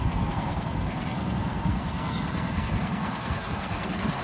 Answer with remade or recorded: remade